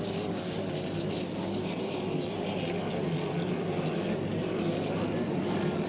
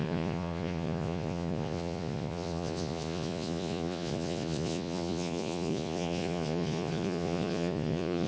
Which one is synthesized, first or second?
second